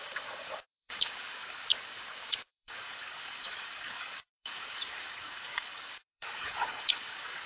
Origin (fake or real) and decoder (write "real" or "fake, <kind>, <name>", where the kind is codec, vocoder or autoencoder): fake, codec, DAC